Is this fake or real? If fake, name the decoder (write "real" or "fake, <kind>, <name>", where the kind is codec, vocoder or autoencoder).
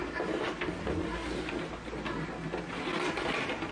real